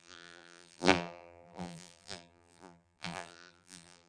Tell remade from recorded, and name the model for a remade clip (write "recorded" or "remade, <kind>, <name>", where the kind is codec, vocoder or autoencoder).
remade, vocoder, BigVGAN v2